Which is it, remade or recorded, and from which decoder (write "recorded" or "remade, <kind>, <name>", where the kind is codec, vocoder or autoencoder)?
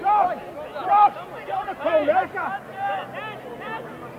recorded